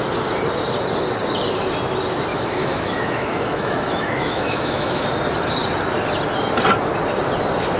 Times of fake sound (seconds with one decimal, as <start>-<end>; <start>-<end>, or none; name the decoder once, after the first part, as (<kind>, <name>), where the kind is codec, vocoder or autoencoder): 2.3-5.0 (autoencoder, DAC-VAE)